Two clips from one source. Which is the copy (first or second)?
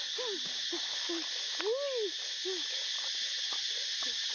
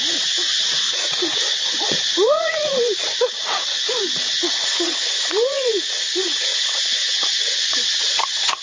second